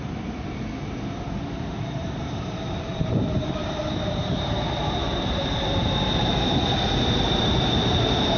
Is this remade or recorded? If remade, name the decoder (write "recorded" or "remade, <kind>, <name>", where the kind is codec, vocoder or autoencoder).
remade, vocoder, BigVGAN v2